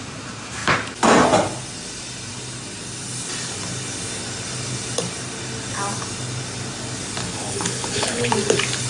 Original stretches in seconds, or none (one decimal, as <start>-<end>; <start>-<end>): 0.0-7.2; 8.3-8.9